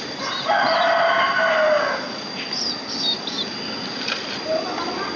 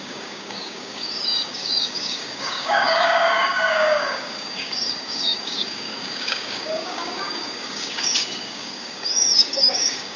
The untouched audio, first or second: first